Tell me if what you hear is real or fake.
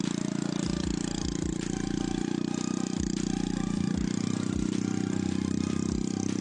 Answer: real